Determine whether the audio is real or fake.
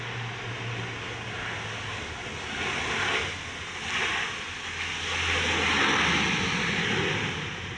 real